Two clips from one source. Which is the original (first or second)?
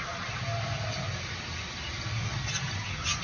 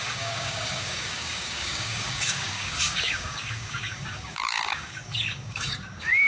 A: first